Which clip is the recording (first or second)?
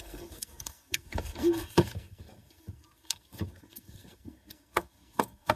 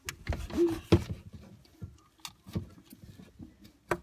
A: second